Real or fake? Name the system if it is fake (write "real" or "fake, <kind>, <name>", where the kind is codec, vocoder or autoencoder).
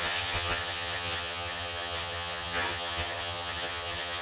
fake, vocoder, HiFi-GAN